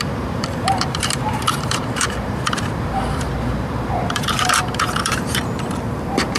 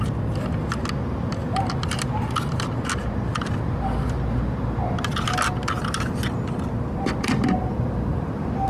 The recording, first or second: second